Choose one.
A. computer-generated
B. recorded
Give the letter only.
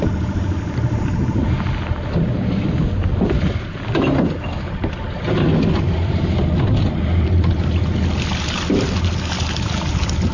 B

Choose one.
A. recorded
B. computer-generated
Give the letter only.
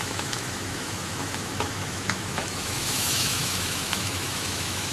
B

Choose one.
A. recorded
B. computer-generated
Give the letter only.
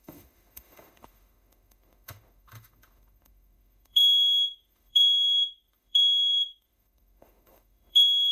B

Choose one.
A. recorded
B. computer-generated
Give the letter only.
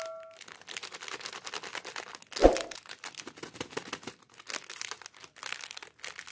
A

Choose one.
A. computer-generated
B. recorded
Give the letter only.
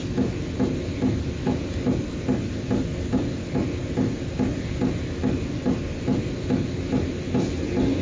B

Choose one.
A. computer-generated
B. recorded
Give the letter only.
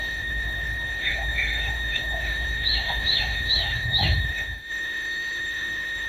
A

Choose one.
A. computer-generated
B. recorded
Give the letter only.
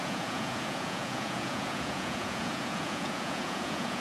A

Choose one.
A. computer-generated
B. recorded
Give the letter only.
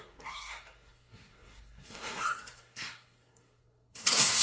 A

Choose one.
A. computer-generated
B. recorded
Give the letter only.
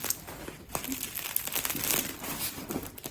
B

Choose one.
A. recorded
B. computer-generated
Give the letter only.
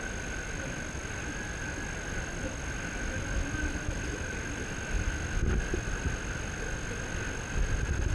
A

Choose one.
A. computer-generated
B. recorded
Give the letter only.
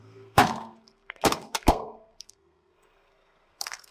A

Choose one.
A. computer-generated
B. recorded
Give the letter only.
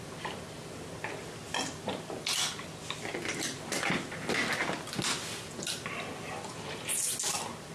B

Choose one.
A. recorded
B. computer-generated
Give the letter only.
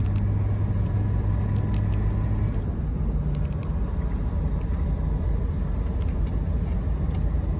A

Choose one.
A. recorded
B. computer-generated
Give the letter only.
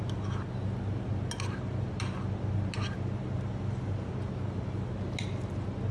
A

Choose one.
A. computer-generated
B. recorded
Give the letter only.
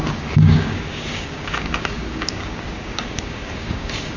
A